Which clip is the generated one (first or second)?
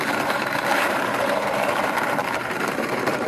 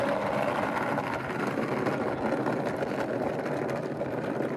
first